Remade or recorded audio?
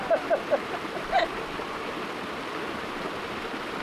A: recorded